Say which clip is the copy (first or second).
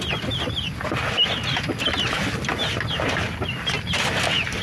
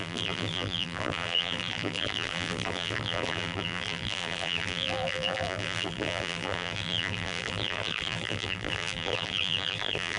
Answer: second